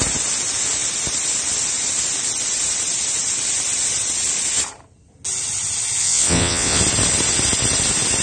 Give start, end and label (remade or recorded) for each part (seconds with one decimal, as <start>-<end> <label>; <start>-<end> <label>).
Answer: 0.0-6.0 recorded; 6.0-6.8 remade; 6.8-8.2 recorded